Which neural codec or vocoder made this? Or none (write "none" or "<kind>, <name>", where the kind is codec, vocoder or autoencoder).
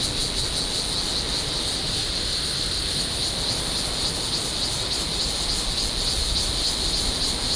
none